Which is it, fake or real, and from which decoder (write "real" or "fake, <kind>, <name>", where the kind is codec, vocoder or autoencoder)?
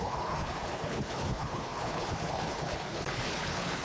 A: fake, codec, HILCodec